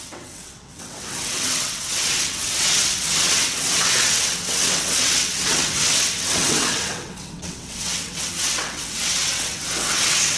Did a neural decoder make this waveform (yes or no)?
yes